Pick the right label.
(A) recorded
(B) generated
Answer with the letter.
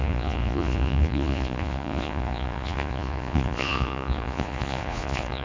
B